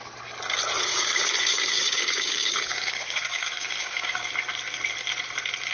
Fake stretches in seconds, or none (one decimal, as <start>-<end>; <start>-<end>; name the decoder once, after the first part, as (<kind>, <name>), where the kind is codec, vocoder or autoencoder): 0.9-4.3 (codec, DAC)